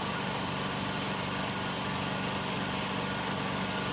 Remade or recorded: recorded